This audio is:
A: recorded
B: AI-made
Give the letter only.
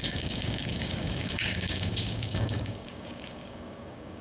B